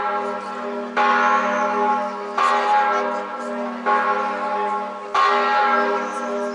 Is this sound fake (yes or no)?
no